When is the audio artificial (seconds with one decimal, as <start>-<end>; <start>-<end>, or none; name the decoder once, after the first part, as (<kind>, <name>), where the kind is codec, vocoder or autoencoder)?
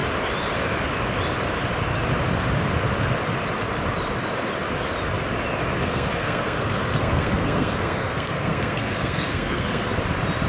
5.8-10.0 (codec, SNAC)